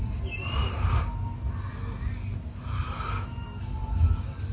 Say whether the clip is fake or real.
real